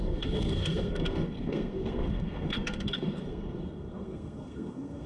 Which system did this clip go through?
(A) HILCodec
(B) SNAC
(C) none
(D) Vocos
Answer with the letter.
B